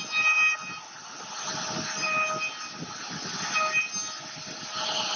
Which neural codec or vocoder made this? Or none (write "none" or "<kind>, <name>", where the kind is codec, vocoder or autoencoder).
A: none